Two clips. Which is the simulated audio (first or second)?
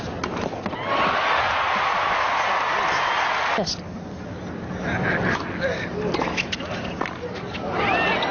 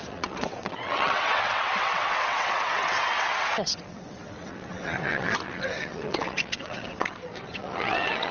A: second